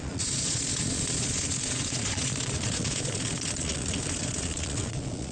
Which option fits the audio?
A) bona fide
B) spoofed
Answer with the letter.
B